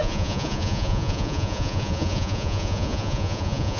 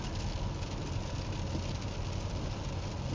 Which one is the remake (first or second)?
first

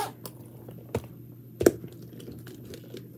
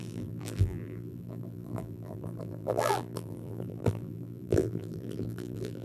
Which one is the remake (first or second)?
second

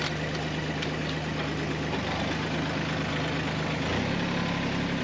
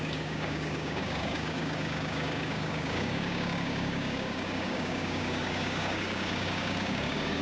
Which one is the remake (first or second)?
second